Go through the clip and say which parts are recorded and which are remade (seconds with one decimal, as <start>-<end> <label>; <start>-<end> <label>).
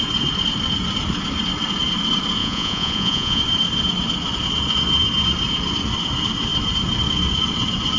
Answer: 0.0-2.4 recorded; 2.4-3.4 remade; 3.4-8.0 recorded